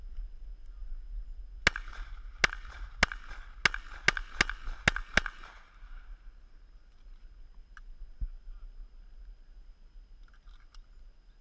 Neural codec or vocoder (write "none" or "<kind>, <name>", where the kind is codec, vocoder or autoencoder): none